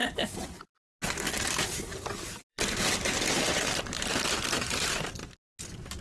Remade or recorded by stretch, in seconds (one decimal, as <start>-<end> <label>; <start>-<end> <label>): 0.0-2.5 recorded; 2.5-5.2 remade; 5.2-6.0 recorded